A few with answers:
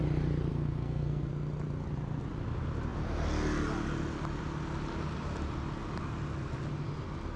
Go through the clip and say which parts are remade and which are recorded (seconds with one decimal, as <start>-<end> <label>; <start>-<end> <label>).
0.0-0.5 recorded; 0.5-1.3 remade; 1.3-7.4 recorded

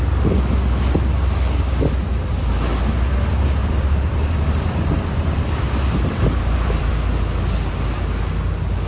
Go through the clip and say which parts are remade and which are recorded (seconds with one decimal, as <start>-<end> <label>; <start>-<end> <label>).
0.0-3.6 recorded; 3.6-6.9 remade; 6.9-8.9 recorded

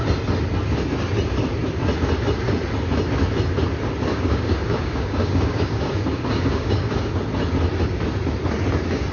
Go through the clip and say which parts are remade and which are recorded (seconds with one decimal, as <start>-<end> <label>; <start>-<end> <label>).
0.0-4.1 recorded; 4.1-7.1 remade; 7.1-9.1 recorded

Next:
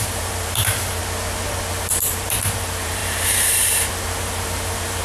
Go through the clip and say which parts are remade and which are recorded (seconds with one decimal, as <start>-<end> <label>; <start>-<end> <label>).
0.0-1.0 remade; 1.0-1.7 recorded; 1.7-5.0 remade

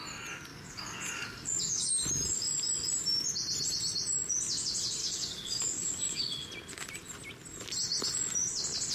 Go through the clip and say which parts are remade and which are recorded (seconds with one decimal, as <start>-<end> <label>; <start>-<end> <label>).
0.0-0.5 recorded; 0.5-1.9 remade; 1.9-5.0 recorded; 5.0-6.5 remade; 6.5-8.9 recorded